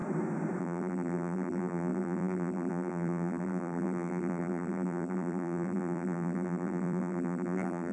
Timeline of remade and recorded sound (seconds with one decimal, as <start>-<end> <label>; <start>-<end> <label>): 0.0-0.6 recorded; 0.6-7.9 remade